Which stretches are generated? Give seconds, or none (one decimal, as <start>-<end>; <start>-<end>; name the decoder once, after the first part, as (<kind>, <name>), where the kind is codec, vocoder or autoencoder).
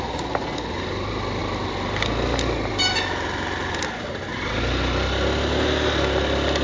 none